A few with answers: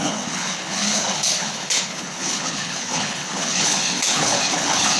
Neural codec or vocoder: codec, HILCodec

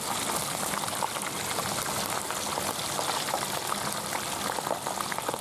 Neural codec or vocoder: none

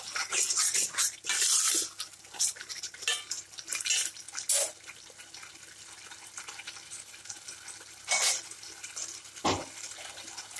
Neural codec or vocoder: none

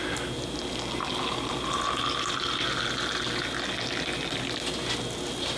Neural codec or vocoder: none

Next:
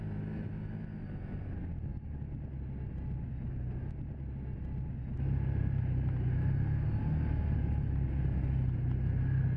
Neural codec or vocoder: none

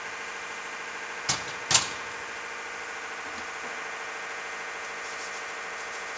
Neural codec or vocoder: none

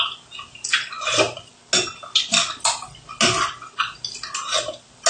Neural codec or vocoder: none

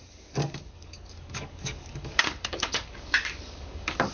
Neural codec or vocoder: codec, DAC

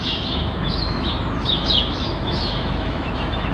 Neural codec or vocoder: autoencoder, DAC-VAE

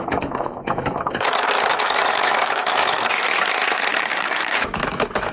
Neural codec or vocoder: autoencoder, DAC-VAE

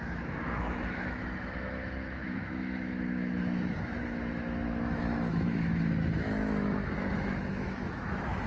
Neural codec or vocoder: autoencoder, DAC-VAE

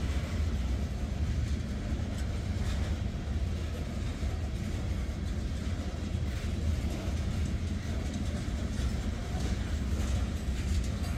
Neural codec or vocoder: none